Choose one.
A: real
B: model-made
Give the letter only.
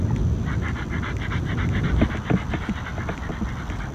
A